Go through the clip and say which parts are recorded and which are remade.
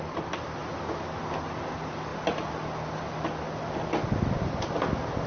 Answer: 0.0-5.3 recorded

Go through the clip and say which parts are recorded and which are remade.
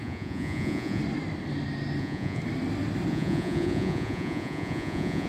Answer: 0.0-1.0 remade; 1.0-2.0 recorded; 2.0-2.4 remade; 2.4-3.1 recorded; 3.1-5.3 remade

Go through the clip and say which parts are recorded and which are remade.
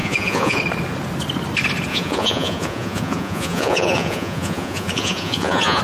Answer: 0.0-0.6 remade; 0.6-1.9 recorded; 1.9-5.8 remade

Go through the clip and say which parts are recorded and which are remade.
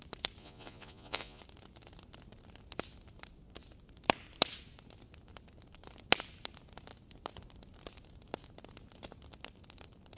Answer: 0.0-0.4 recorded; 0.4-1.4 remade; 1.4-10.2 recorded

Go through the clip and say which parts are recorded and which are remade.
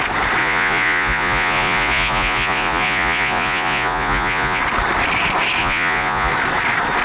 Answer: 0.0-0.4 recorded; 0.4-4.6 remade; 4.6-5.6 recorded; 5.6-6.3 remade; 6.3-7.0 recorded